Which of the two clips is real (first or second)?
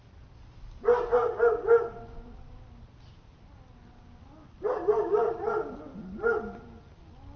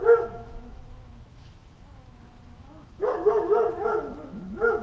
first